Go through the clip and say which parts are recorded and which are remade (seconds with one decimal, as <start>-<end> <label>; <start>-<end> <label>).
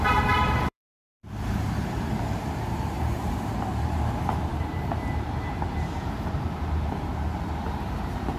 0.0-8.4 remade